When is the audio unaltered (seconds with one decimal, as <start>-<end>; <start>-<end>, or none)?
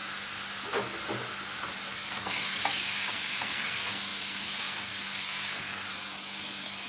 0.0-1.9